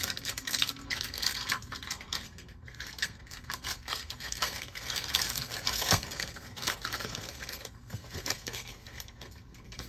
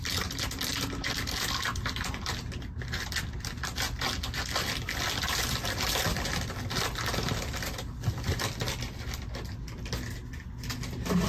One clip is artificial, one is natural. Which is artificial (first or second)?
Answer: first